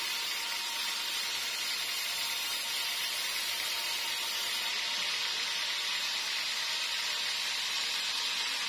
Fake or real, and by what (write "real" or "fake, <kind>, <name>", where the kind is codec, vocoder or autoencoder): real